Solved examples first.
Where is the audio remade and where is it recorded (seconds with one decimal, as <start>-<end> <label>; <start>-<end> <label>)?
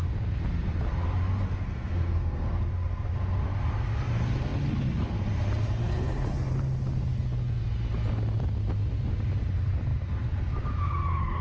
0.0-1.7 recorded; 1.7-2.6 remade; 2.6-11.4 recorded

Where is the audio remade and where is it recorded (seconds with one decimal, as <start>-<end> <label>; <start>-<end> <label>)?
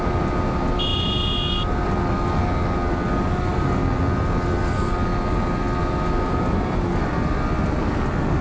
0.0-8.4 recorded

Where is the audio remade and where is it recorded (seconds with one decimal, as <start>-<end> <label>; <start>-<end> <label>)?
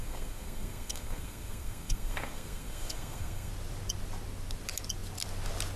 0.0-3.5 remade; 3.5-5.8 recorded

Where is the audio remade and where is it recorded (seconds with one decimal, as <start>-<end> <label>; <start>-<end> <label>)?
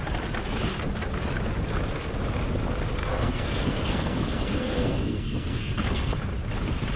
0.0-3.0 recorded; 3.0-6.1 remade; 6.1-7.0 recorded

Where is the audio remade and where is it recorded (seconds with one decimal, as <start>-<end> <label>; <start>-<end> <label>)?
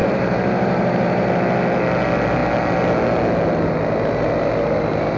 0.0-1.3 remade; 1.3-5.2 recorded